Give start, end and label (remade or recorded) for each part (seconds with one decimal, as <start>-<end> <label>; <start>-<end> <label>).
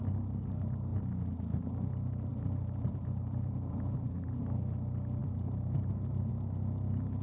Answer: 0.0-2.3 recorded; 2.3-4.4 remade; 4.4-5.2 recorded; 5.2-6.3 remade; 6.3-7.2 recorded